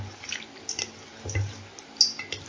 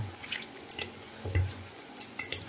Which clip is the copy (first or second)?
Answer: second